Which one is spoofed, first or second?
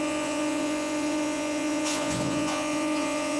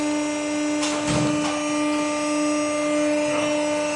first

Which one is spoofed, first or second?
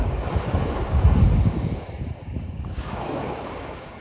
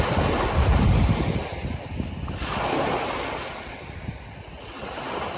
first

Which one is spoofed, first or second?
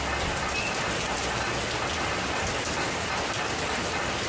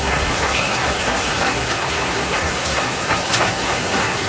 second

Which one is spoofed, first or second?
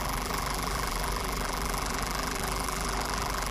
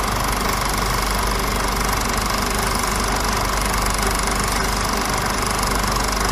first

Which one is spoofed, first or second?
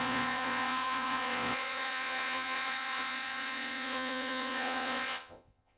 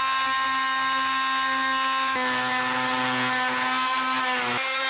first